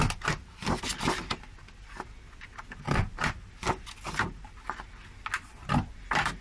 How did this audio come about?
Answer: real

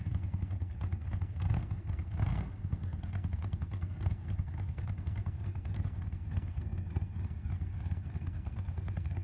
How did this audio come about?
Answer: fake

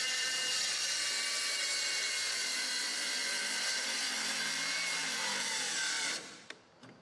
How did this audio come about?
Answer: fake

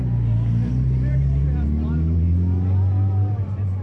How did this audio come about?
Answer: real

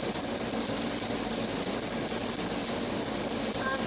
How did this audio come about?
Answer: real